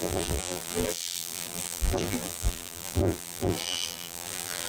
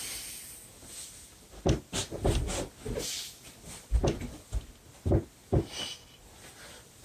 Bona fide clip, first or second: second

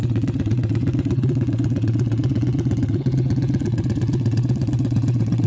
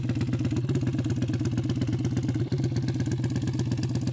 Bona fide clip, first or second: second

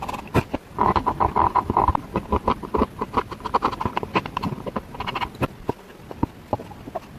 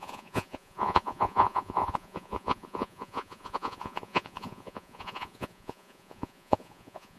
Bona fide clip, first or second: first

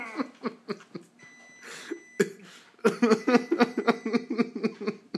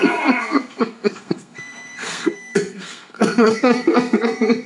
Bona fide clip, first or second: first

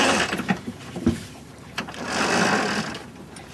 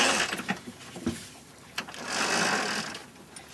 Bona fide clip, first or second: second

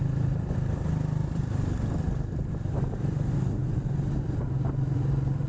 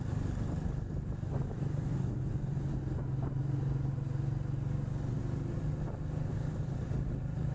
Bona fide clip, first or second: second